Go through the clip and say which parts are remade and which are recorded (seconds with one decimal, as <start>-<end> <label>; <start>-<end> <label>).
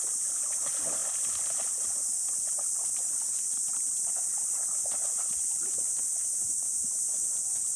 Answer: 0.0-7.8 recorded